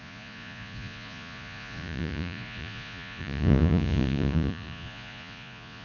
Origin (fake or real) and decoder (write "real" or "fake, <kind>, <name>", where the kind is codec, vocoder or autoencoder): fake, vocoder, Vocos